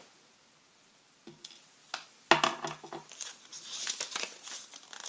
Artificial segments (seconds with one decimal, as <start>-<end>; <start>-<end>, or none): none